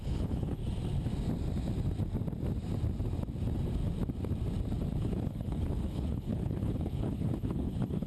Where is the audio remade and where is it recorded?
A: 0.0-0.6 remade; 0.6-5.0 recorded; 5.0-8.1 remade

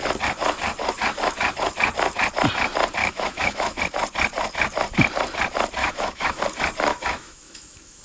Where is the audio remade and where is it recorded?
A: 0.0-3.0 recorded; 3.0-3.8 remade; 3.8-5.8 recorded; 5.8-6.4 remade; 6.4-6.9 recorded; 6.9-8.0 remade

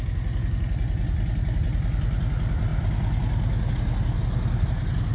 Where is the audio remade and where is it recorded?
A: 0.0-5.1 recorded

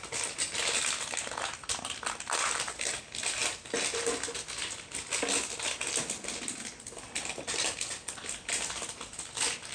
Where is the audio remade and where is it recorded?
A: 0.0-9.7 recorded